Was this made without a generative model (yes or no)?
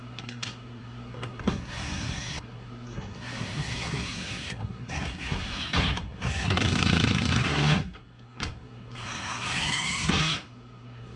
no